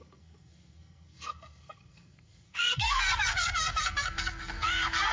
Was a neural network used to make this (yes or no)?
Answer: yes